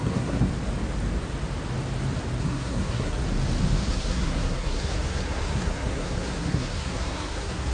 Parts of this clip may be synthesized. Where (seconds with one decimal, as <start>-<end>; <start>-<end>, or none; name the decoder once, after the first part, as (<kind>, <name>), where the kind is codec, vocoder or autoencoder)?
0.0-0.5 (codec, SNAC); 2.4-3.2; 3.9-7.7